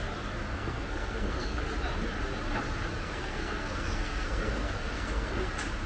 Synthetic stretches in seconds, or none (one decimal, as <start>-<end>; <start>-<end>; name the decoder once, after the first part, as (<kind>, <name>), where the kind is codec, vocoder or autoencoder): 0.5-1.6 (codec, SNAC); 2.9-5.5